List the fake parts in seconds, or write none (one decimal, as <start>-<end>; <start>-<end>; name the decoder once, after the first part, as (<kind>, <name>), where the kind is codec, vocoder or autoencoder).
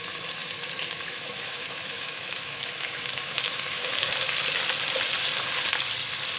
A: 0.4-4.1 (autoencoder, DAC-VAE)